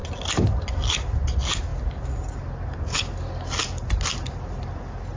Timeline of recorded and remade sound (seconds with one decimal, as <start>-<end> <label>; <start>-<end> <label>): 0.0-5.2 recorded